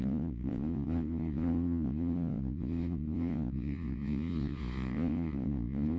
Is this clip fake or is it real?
fake